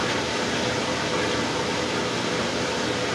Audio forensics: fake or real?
real